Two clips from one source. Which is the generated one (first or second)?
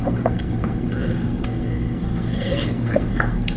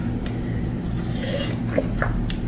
first